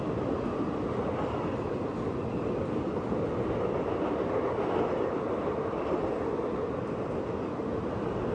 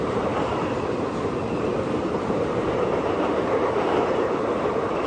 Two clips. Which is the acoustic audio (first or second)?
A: first